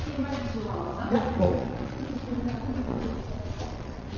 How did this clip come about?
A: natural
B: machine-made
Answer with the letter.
B